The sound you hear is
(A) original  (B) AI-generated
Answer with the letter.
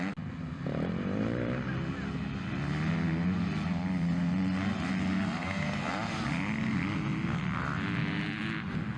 A